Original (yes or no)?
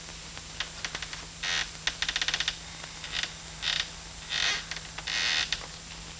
yes